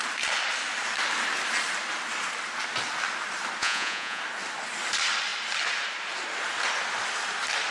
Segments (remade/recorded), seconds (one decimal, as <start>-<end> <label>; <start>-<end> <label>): 0.0-3.6 recorded; 3.6-4.2 remade; 4.2-7.7 recorded